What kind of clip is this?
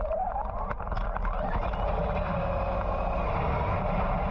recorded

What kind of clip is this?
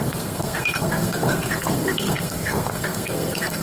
remade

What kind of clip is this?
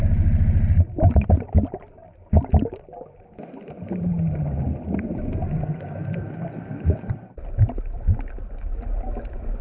recorded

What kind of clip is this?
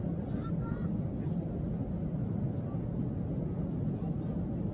recorded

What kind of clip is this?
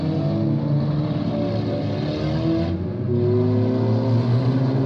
recorded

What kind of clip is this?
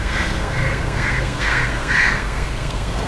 remade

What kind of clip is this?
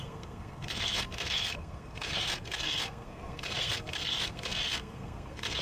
remade